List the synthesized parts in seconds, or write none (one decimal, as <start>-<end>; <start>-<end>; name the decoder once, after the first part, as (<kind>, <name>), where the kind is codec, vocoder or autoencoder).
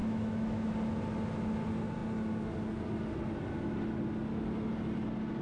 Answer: 0.0-0.7 (autoencoder, DAC-VAE)